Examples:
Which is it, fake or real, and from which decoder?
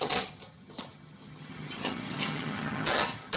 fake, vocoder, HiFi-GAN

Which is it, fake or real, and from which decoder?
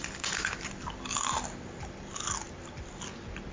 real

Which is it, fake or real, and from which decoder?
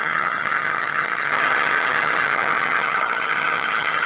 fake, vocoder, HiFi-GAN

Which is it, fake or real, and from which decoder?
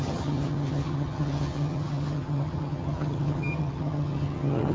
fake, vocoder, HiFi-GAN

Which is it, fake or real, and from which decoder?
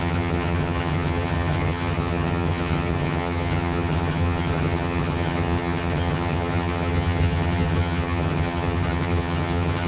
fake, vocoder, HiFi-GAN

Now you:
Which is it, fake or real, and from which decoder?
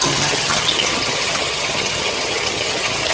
fake, vocoder, HiFi-GAN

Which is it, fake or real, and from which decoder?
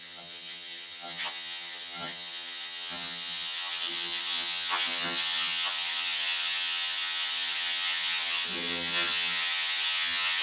fake, vocoder, HiFi-GAN